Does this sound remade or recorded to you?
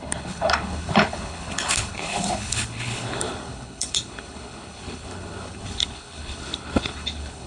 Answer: remade